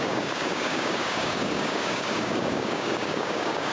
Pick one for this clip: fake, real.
fake